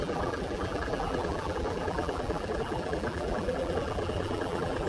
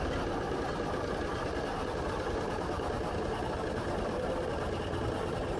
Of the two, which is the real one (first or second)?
second